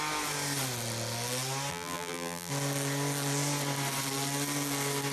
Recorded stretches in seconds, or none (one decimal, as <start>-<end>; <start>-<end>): 0.0-1.7; 2.5-5.1